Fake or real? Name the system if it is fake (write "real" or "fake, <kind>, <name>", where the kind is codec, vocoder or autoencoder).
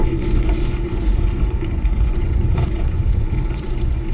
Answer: fake, vocoder, Vocos